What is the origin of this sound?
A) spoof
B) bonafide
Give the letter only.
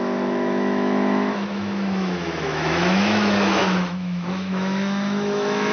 A